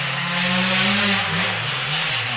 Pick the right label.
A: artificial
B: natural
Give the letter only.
B